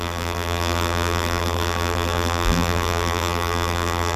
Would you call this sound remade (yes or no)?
yes